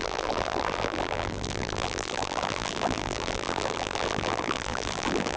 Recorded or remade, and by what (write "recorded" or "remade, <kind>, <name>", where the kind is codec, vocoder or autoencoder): remade, vocoder, BigVGAN v2